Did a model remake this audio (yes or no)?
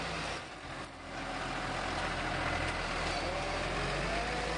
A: no